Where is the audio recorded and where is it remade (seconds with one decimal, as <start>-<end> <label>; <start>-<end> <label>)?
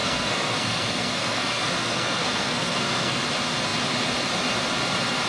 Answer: 0.0-3.2 remade; 3.2-5.3 recorded